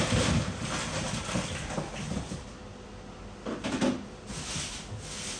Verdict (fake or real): real